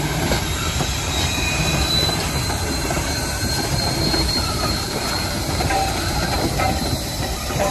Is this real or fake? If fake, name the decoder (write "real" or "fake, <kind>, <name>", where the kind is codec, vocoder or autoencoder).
fake, vocoder, BigVGAN v2